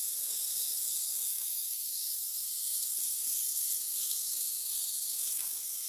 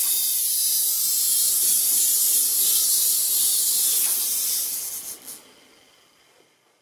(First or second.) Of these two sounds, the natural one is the second